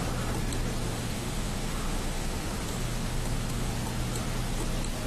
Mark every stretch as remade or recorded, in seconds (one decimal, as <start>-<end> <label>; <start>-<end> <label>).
0.0-0.8 recorded; 0.8-3.7 remade; 3.7-5.1 recorded